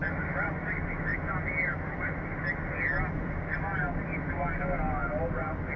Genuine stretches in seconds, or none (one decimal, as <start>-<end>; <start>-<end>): 0.0-5.8